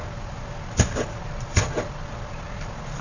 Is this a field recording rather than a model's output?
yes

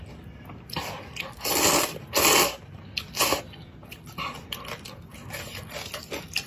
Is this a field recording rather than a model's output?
yes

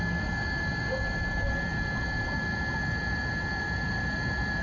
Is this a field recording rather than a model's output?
yes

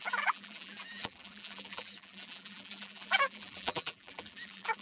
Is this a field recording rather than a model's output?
no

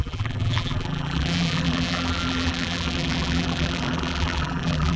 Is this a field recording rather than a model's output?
no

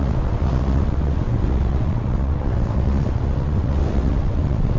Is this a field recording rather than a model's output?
no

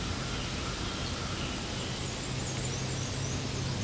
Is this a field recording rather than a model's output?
yes